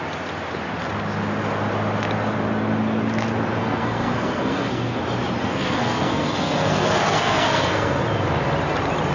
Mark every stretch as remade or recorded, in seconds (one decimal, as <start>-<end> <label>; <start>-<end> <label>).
0.0-3.6 recorded; 3.6-5.0 remade; 5.0-5.4 recorded; 5.4-8.0 remade; 8.0-9.1 recorded